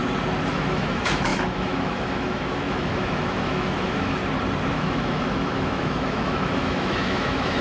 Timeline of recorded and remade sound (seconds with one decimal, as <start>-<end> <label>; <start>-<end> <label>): 0.0-0.5 recorded; 0.5-4.2 remade; 4.2-4.7 recorded; 4.7-7.6 remade